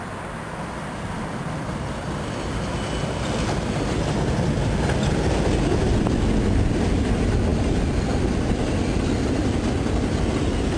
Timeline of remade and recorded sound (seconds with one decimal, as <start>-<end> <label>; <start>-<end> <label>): 0.0-10.8 recorded